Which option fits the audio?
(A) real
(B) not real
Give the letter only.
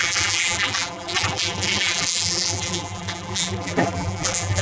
B